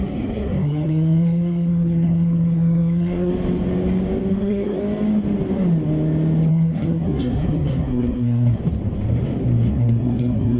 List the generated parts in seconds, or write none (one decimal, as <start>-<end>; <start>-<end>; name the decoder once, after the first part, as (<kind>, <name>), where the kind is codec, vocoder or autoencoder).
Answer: 0.0-3.3 (codec, SNAC); 4.3-4.8; 6.5-8.6; 9.7-10.6